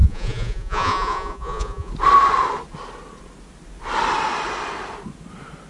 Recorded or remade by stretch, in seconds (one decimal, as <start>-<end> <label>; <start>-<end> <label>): 0.0-1.9 remade; 1.9-5.7 recorded